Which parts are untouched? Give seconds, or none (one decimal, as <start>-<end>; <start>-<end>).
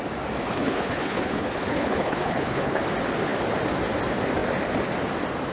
0.0-0.4; 2.8-5.5